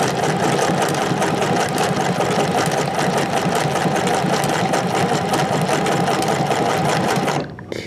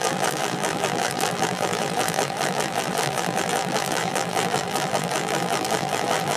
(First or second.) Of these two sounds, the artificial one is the second